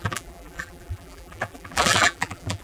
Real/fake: fake